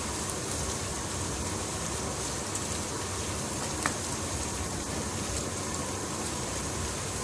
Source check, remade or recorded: recorded